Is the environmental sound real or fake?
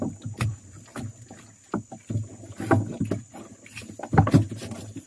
real